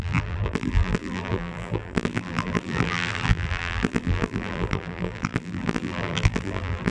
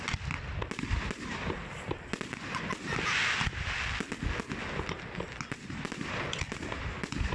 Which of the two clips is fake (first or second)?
first